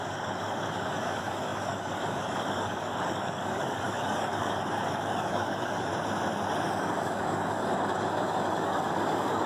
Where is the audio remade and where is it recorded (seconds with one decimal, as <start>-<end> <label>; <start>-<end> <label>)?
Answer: 0.0-5.9 remade; 5.9-6.7 recorded; 6.7-9.5 remade